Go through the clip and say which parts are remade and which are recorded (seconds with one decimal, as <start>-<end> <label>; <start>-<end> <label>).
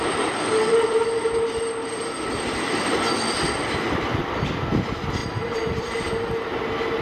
0.0-5.2 recorded; 5.2-6.1 remade; 6.1-7.0 recorded